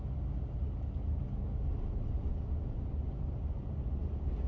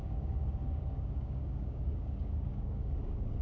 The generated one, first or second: second